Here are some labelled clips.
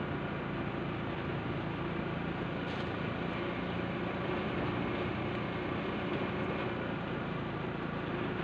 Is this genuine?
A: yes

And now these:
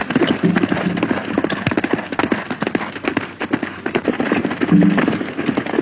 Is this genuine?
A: yes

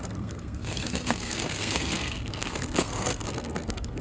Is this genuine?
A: no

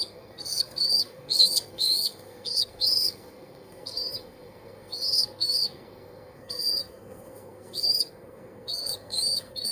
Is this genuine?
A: no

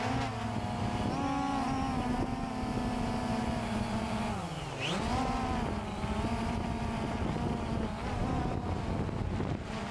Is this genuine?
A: yes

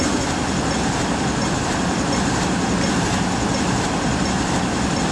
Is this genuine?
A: yes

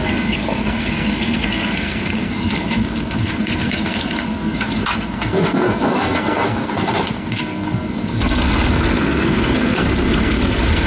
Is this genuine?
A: no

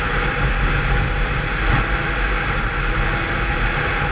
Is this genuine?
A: yes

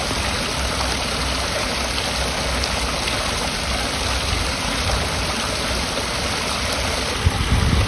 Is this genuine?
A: yes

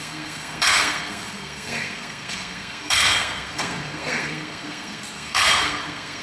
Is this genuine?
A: no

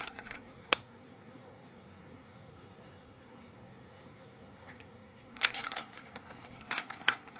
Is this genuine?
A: no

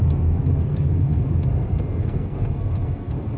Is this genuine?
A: no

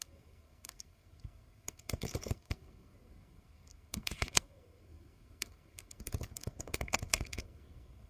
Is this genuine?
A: no